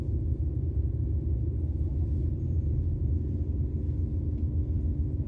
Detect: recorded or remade recorded